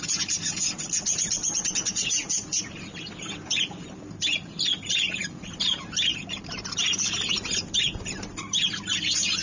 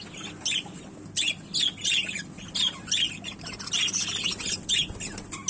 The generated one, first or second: first